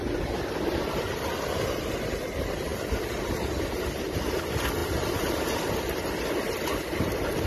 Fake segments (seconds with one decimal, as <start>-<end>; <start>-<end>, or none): none